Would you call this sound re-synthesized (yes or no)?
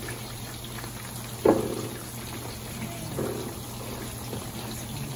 no